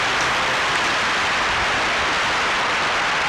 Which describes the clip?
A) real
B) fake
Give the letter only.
A